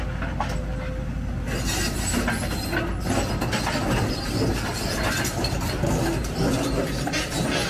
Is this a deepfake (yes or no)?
no